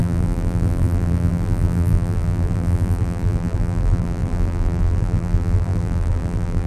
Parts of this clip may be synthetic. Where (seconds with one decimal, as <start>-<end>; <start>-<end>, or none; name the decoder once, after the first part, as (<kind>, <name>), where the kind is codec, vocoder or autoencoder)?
0.0-6.7 (vocoder, BigVGAN v2)